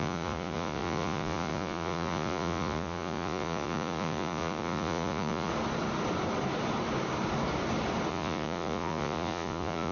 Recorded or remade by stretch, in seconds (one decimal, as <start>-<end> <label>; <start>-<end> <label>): 0.0-5.5 remade; 5.5-8.1 recorded; 8.1-9.9 remade